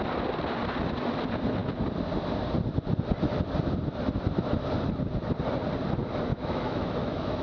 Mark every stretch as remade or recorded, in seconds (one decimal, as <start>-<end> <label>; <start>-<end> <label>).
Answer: 0.0-6.3 recorded; 6.3-7.4 remade